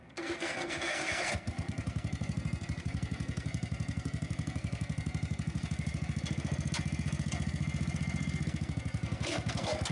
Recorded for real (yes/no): no